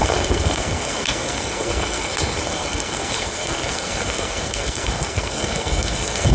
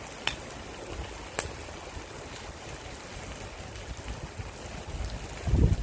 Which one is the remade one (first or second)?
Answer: first